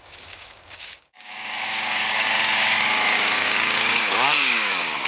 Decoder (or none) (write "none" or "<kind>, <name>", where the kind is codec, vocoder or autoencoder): codec, DAC